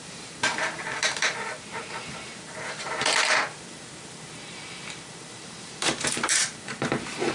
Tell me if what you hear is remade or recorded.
remade